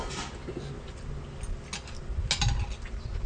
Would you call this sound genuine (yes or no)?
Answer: yes